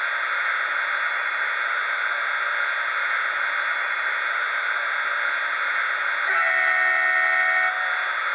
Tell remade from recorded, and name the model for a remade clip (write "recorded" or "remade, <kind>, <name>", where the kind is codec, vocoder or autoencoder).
recorded